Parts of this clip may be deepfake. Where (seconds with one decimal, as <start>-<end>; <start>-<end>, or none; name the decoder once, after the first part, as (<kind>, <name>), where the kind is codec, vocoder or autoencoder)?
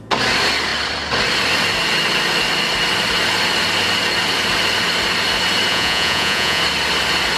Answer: 5.7-6.6 (vocoder, Vocos)